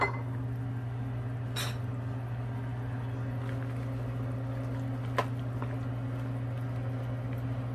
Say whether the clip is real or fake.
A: real